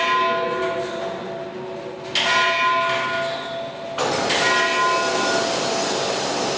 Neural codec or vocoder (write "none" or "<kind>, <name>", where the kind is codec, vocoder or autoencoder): none